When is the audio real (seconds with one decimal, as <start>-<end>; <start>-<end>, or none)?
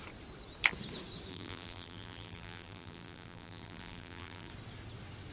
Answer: 0.0-1.3; 4.5-5.3